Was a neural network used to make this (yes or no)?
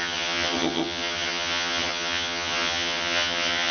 yes